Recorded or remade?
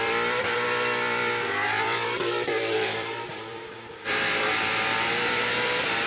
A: remade